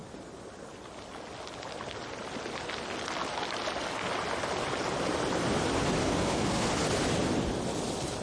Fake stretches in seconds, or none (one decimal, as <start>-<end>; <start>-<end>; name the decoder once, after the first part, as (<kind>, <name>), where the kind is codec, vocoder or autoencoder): 6.0-6.7 (codec, SNAC)